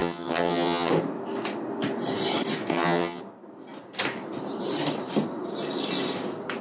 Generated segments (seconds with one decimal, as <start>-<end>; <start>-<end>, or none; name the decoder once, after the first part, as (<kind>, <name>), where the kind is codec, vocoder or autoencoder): 0.0-0.9 (vocoder, HiFi-GAN); 2.7-3.2